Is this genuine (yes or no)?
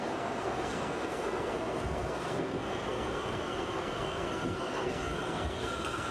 no